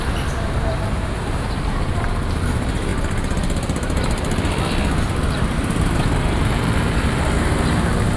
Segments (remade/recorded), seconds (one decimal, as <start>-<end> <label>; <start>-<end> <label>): 0.0-2.9 remade; 2.9-5.0 recorded; 5.0-8.2 remade